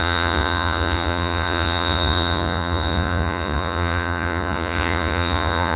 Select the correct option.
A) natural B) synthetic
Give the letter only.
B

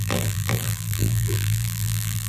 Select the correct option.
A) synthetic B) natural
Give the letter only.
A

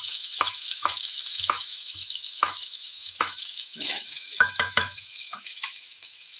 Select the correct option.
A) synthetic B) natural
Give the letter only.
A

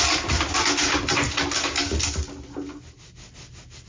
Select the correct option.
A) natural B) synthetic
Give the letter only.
A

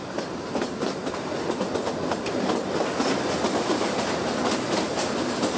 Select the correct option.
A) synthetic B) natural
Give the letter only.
B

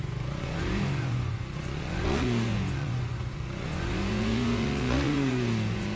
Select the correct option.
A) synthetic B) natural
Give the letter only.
A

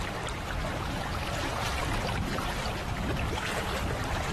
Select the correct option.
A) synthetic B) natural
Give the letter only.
A